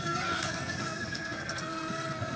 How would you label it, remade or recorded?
remade